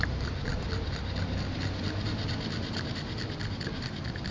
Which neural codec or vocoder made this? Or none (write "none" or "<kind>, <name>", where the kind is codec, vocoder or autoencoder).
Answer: none